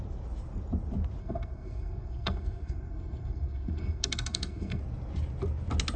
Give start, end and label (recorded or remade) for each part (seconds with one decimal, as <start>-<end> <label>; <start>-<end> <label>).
0.0-1.2 recorded; 1.2-4.8 remade; 4.8-6.0 recorded